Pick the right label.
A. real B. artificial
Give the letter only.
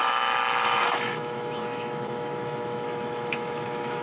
B